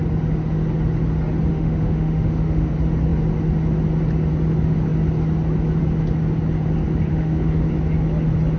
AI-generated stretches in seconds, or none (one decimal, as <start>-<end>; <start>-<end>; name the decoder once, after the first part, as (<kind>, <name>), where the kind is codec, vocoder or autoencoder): 1.5-2.7 (autoencoder, DAC-VAE); 7.1-7.7